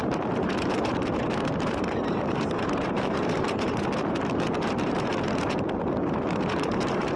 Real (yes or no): no